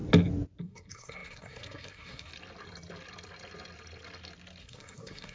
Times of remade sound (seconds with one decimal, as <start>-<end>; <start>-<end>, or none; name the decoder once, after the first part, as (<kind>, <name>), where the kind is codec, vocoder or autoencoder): 0.6-2.3 (codec, SNAC); 4.6-5.3